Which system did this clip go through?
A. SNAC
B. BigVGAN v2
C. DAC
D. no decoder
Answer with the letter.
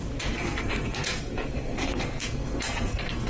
A